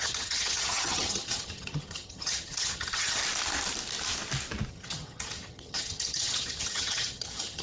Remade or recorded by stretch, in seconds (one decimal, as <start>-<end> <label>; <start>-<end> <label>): 0.0-3.2 remade; 3.2-4.7 recorded; 4.7-7.6 remade